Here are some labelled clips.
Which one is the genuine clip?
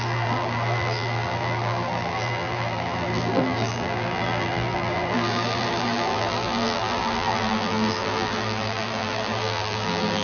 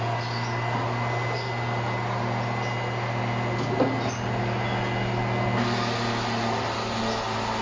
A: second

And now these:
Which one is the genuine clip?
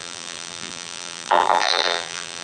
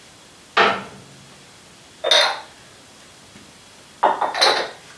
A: second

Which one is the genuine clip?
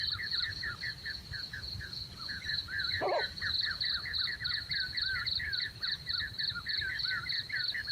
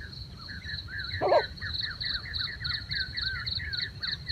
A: first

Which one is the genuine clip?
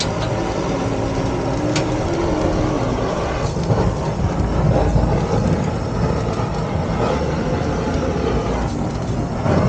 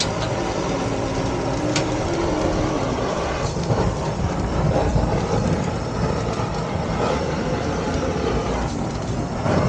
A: first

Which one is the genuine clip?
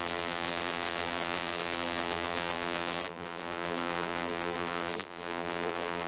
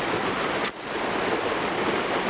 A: second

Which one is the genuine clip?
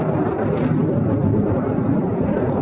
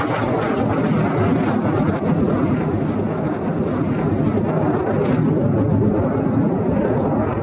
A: second